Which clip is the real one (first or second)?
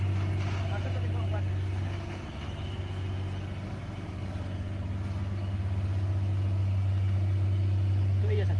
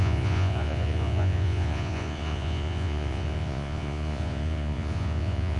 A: first